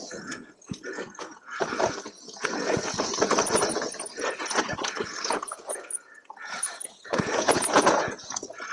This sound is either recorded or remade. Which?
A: remade